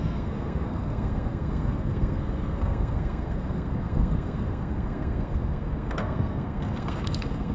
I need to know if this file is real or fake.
fake